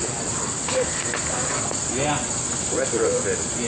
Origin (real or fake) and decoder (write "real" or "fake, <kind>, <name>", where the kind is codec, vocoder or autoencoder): real